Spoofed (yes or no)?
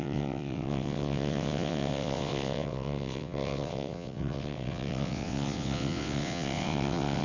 yes